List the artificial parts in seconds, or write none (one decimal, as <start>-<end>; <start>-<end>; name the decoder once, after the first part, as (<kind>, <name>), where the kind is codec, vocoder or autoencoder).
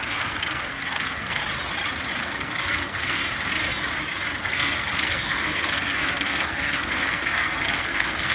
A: 0.0-1.4 (codec, SNAC); 2.2-3.2; 4.4-8.3